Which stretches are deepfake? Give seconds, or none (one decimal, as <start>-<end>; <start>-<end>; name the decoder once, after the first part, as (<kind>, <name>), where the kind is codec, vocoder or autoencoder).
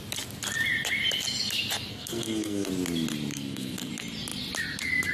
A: 1.9-2.7 (codec, SNAC); 3.3-3.9